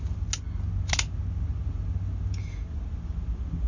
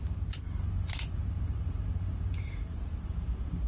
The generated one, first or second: second